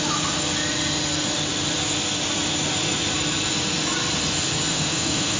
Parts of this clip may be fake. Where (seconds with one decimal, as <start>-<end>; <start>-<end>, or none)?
4.7-5.4